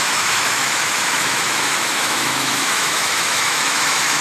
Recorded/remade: remade